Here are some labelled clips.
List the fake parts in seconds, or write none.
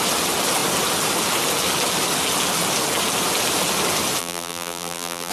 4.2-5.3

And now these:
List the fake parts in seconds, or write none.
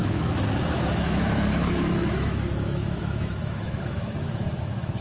0.0-5.0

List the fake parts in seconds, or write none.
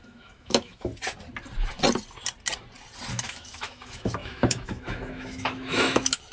0.0-0.9; 3.1-6.3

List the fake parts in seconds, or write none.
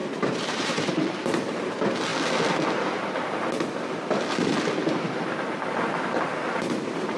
0.0-1.7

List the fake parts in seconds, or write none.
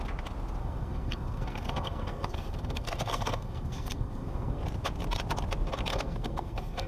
0.6-4.6; 5.9-6.9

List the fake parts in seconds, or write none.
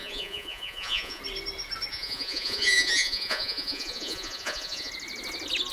0.0-1.2; 1.9-4.9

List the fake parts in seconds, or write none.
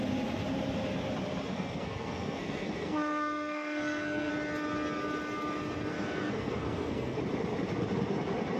1.5-4.3; 5.9-7.2